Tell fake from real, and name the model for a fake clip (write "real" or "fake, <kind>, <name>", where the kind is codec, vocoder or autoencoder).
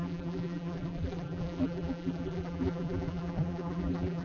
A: fake, vocoder, BigVGAN v2